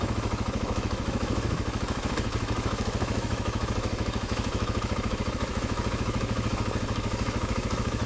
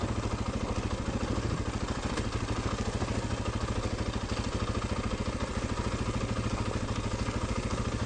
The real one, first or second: second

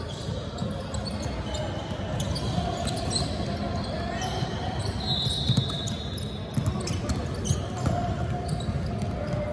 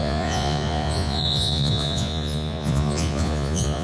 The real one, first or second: first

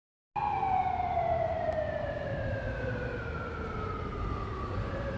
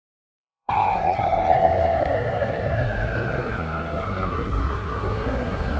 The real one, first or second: first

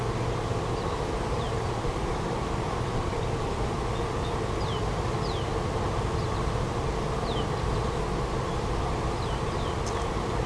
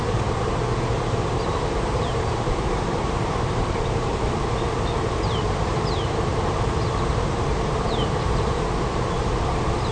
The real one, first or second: first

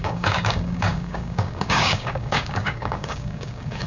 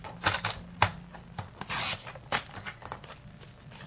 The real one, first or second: second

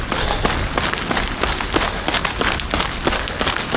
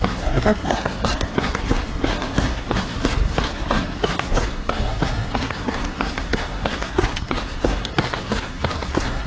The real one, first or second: first